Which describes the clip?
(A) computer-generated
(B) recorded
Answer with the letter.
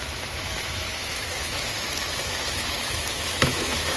A